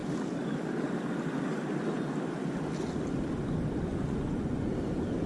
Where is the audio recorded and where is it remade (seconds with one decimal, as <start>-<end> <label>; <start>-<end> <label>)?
0.0-3.9 recorded; 3.9-4.7 remade; 4.7-5.3 recorded